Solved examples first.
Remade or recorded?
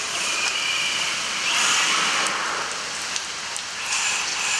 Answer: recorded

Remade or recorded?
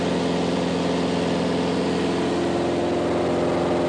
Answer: recorded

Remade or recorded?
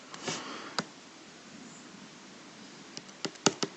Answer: recorded